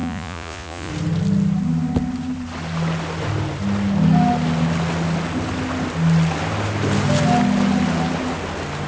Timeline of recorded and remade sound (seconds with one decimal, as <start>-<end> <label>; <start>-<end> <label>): 0.0-0.9 remade; 0.9-8.9 recorded